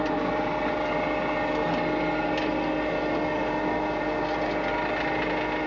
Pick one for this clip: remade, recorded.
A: recorded